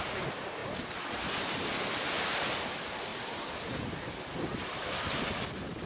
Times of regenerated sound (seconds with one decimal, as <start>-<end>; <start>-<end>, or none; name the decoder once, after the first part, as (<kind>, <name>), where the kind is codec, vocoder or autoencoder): 3.1-5.2 (vocoder, BigVGAN v2)